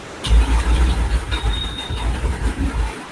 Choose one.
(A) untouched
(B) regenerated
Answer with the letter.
B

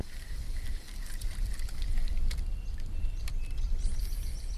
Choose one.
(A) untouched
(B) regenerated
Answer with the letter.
A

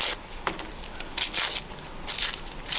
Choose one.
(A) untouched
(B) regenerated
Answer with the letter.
A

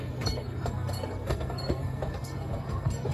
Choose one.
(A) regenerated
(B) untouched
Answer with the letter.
A